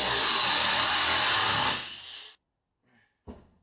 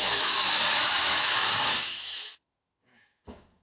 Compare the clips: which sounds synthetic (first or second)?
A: second